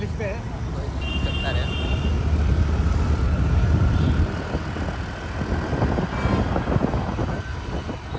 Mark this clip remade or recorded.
recorded